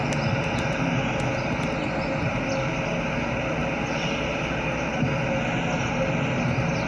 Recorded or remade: recorded